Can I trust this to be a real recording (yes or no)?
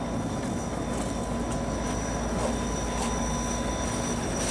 yes